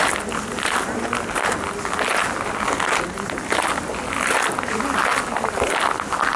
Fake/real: real